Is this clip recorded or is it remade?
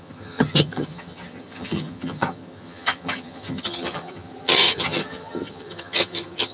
remade